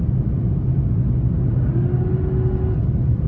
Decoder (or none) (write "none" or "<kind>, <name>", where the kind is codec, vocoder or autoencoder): none